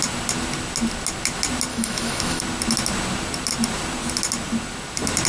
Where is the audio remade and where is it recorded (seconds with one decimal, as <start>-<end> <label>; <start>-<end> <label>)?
0.0-1.7 recorded; 1.7-2.4 remade; 2.4-5.3 recorded